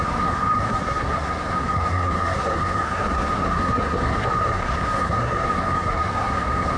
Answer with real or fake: fake